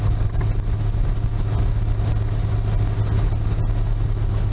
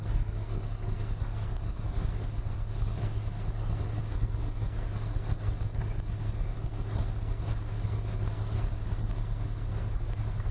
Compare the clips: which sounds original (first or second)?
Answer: first